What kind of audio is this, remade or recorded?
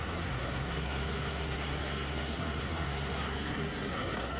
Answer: remade